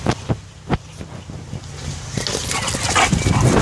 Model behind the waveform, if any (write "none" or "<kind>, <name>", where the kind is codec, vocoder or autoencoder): none